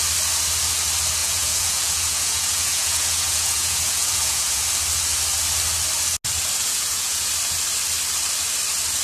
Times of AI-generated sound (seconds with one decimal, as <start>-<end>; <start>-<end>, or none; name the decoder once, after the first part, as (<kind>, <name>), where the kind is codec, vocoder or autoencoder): 1.2-4.6 (vocoder, Vocos); 6.6-7.3